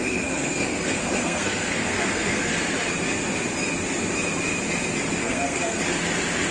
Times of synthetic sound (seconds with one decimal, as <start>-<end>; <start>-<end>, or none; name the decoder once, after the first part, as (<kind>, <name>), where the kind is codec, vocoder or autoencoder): 0.0-2.5 (codec, SNAC); 5.2-5.8